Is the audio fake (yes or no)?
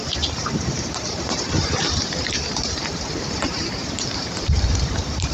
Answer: yes